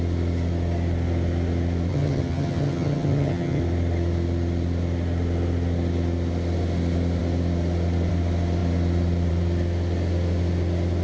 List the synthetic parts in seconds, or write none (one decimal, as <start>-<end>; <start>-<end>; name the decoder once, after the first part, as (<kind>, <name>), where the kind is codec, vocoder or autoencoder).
1.9-3.6 (vocoder, HiFi-GAN)